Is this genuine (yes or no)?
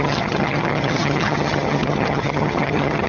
no